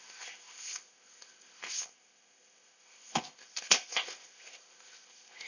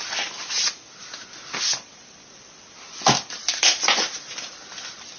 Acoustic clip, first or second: second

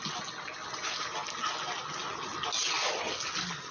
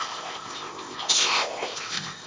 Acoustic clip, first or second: first